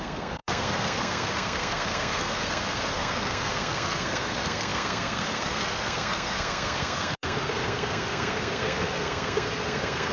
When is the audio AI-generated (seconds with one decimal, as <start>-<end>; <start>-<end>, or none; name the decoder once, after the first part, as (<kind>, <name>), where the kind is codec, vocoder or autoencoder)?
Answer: 0.0-10.1 (codec, SNAC)